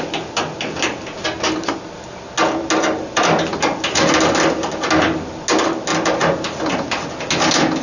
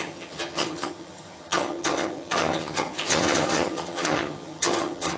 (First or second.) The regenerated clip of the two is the second